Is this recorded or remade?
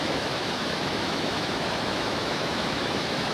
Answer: remade